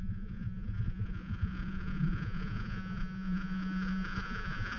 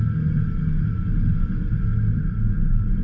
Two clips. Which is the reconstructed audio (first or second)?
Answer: first